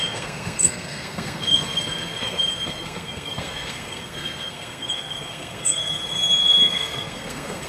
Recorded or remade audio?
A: remade